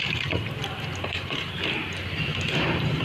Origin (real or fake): real